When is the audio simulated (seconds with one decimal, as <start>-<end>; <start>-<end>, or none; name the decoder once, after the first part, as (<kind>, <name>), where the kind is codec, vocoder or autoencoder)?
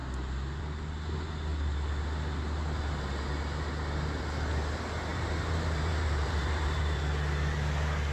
5.1-7.0 (vocoder, BigVGAN v2)